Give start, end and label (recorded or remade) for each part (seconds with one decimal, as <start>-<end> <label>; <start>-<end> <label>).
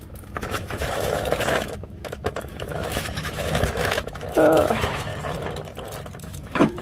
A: 0.0-5.1 remade; 5.1-6.2 recorded; 6.2-6.8 remade